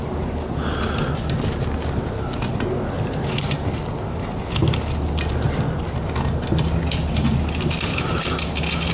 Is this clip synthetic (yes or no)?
no